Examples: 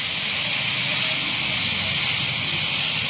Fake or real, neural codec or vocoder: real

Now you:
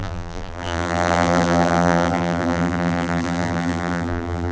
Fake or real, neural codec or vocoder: fake, vocoder, BigVGAN v2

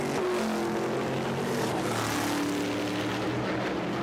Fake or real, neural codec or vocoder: real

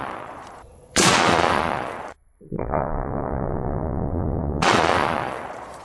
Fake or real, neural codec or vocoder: fake, vocoder, Vocos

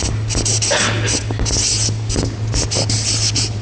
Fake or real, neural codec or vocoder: real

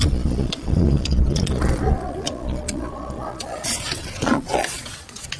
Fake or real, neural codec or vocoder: fake, vocoder, Vocos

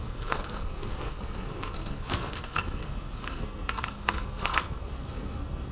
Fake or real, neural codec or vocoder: fake, codec, SNAC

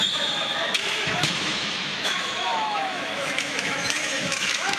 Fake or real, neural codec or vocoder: fake, autoencoder, DAC-VAE